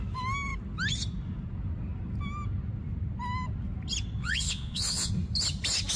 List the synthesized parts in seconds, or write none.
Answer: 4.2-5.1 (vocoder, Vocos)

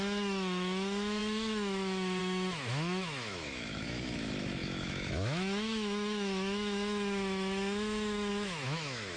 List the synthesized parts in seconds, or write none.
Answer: 0.0-9.2 (autoencoder, DAC-VAE)